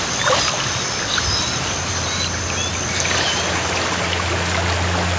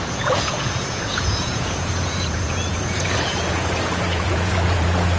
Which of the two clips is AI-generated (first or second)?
second